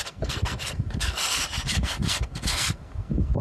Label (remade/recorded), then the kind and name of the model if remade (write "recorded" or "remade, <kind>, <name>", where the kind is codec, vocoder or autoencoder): remade, codec, SNAC